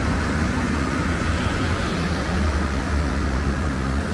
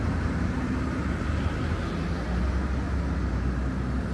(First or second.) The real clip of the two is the second